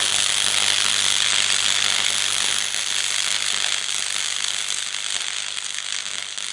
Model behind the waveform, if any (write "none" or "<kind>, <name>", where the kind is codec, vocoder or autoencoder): none